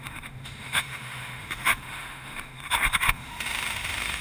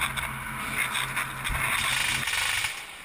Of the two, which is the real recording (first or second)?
second